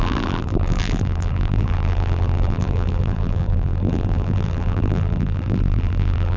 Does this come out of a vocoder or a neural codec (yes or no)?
yes